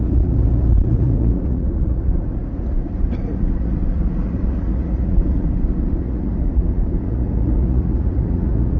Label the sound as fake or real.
fake